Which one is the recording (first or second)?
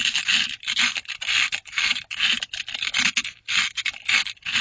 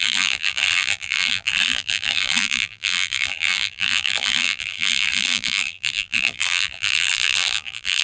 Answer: first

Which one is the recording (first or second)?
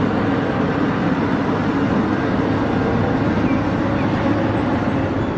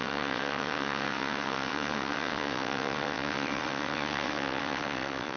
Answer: first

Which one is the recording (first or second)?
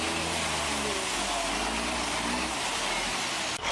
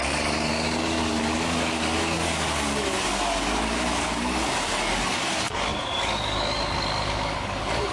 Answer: first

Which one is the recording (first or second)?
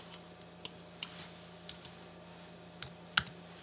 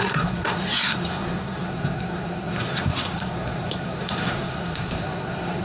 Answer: first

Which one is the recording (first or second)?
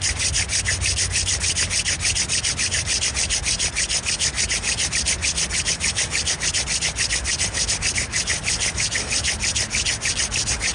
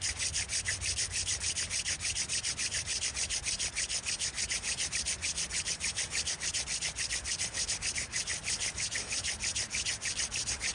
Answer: first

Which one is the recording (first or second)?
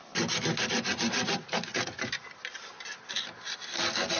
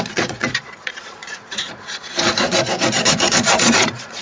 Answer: first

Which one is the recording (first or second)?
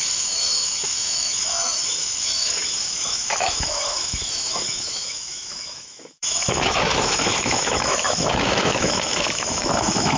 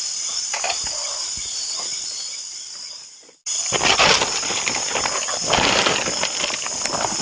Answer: second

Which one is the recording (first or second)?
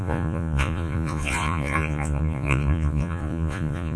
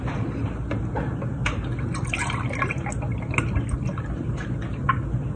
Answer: second